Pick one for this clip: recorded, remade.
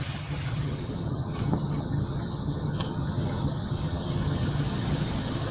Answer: remade